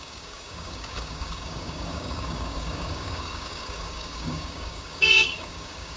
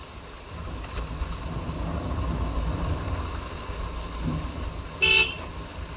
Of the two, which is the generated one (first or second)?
first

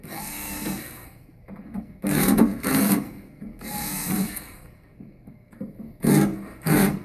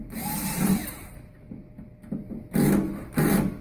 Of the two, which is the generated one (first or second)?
first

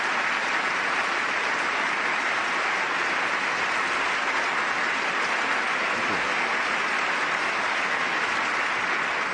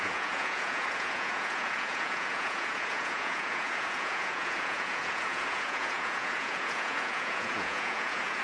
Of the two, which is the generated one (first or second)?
second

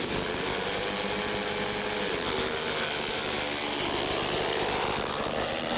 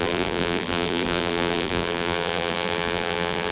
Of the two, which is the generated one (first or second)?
second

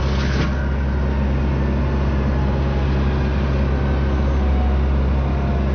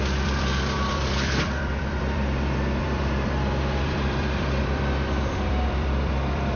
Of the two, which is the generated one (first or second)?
second